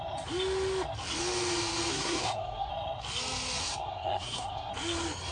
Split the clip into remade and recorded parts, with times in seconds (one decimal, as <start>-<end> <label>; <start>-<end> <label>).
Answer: 0.0-1.9 recorded; 1.9-2.7 remade; 2.7-3.6 recorded; 3.6-4.7 remade; 4.7-5.3 recorded